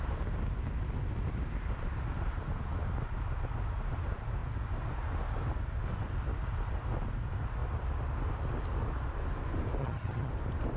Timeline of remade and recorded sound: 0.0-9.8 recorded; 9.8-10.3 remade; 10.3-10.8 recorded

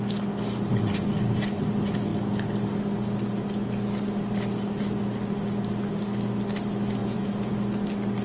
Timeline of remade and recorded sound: 0.0-7.0 recorded; 7.0-7.5 remade; 7.5-8.2 recorded

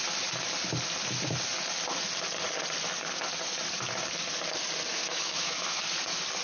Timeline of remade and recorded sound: 0.0-4.9 recorded; 4.9-5.8 remade; 5.8-6.4 recorded

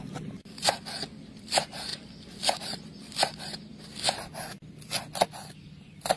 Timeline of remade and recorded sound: 0.0-6.2 recorded

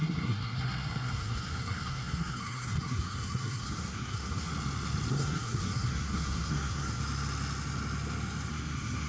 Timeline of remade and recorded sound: 0.0-4.5 remade; 4.5-5.1 recorded; 5.1-7.0 remade; 7.0-8.5 recorded; 8.5-9.1 remade

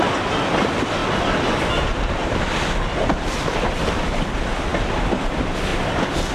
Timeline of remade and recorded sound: 0.0-1.0 remade; 1.0-1.6 recorded; 1.6-2.2 remade; 2.2-3.5 recorded; 3.5-4.7 remade; 4.7-5.2 recorded; 5.2-5.7 remade; 5.7-6.3 recorded